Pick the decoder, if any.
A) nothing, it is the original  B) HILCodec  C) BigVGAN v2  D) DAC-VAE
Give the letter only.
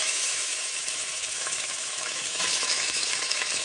D